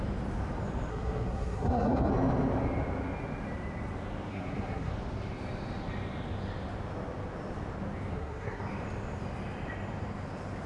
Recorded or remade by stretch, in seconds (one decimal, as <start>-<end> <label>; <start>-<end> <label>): 0.0-0.9 recorded; 0.9-2.1 remade; 2.1-4.3 recorded; 4.3-4.9 remade; 4.9-8.1 recorded; 8.1-8.6 remade; 8.6-10.7 recorded